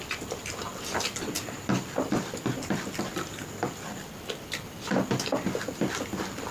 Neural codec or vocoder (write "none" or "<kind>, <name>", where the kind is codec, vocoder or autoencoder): vocoder, BigVGAN v2